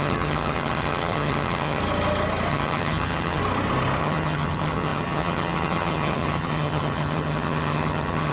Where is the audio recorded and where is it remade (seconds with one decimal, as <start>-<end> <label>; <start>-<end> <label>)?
0.0-1.8 remade; 1.8-2.5 recorded; 2.5-3.4 remade; 3.4-4.0 recorded; 4.0-8.3 remade